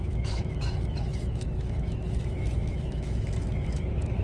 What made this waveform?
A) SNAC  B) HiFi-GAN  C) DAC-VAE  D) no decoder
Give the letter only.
C